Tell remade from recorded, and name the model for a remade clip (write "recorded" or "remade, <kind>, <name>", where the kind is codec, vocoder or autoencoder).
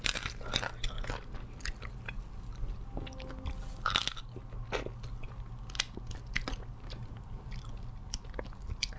recorded